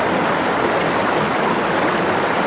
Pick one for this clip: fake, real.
real